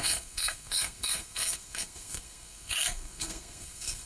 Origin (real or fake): fake